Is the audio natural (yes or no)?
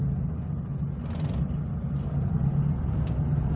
yes